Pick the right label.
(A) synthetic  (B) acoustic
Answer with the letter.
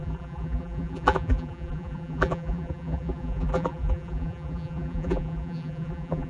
A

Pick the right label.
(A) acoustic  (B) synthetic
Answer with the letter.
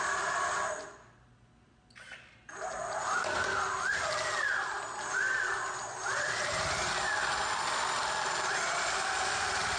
A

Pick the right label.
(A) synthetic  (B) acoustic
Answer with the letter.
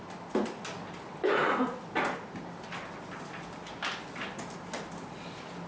B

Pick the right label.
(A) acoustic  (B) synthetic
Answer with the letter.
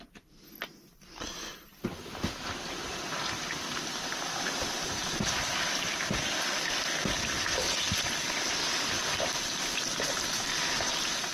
A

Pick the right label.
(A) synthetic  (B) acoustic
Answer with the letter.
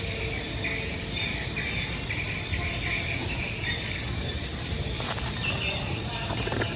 B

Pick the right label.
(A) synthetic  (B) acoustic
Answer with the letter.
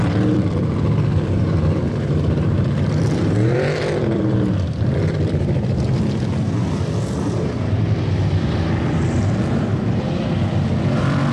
A